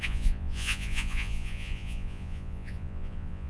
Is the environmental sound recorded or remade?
remade